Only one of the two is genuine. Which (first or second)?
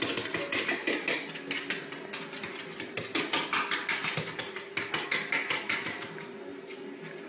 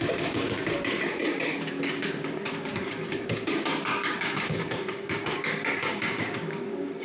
first